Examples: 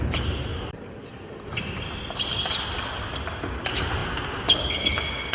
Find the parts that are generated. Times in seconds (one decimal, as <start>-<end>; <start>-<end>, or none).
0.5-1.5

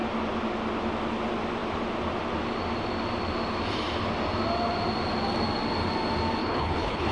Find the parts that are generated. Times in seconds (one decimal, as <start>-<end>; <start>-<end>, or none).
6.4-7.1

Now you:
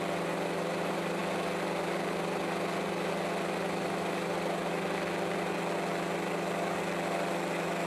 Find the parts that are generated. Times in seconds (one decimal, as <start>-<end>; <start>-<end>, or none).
none

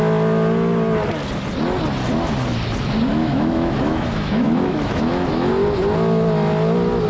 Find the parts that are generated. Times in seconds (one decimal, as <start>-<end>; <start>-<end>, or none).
3.1-5.5

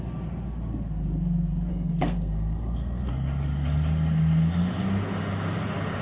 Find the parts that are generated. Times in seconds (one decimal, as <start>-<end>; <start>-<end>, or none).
1.7-3.1

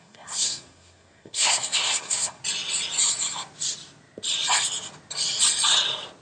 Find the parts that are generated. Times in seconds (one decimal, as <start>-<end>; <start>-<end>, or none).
0.0-2.4

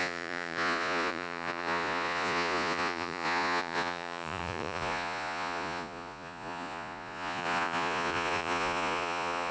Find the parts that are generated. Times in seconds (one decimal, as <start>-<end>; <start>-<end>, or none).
0.0-9.5

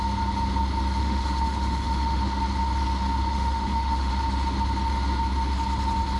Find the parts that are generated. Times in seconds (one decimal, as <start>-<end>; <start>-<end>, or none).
1.0-2.2; 3.3-4.1